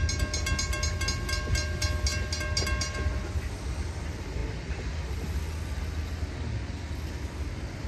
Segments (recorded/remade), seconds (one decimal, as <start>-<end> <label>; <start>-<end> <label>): 0.0-7.9 recorded

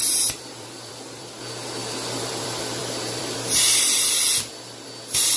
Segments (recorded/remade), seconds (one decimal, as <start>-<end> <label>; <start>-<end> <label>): 0.0-1.4 remade; 1.4-1.8 recorded; 1.8-4.9 remade; 4.9-5.4 recorded

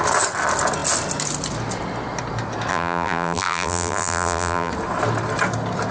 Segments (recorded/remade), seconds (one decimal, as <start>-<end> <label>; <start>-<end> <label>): 0.0-2.7 recorded; 2.7-4.7 remade; 4.7-5.9 recorded

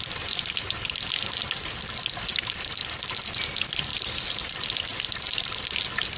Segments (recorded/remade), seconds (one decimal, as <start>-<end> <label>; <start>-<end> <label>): 0.0-2.3 recorded; 2.3-3.1 remade; 3.1-4.9 recorded; 4.9-6.2 remade

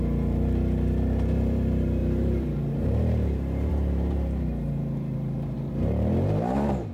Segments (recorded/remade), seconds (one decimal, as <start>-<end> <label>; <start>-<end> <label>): 0.0-6.9 remade

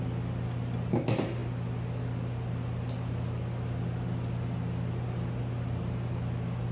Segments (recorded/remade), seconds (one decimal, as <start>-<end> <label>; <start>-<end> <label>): 0.0-6.7 recorded